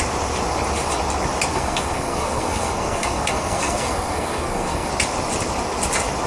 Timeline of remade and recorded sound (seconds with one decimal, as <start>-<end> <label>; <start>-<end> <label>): 0.0-1.5 recorded; 1.5-4.9 remade; 4.9-6.3 recorded